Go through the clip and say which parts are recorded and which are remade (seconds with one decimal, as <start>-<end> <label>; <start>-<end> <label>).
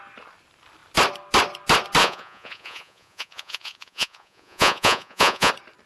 0.0-2.0 recorded; 2.0-5.5 remade; 5.5-5.9 recorded